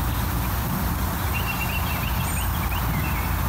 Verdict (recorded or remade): recorded